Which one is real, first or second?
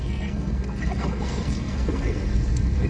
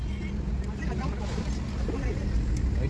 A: second